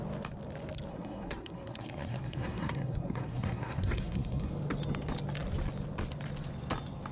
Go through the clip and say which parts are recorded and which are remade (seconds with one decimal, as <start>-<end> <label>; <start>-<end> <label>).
0.0-0.9 recorded; 0.9-4.5 remade; 4.5-7.1 recorded